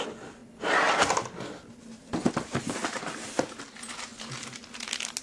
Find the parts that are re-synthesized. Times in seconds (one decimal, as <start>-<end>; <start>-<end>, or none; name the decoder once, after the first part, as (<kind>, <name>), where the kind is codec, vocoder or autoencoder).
none